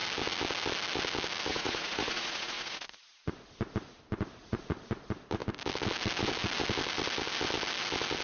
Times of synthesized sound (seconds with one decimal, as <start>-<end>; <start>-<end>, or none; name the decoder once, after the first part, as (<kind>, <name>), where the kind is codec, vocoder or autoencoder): 1.5-3.3 (vocoder, Vocos); 4.4-4.9